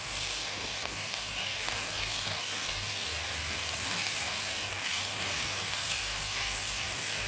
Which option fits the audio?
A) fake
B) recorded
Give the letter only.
A